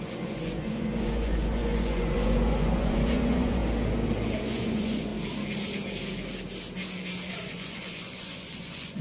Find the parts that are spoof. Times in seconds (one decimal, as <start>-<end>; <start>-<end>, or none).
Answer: 0.0-3.6; 4.4-5.1; 7.3-9.0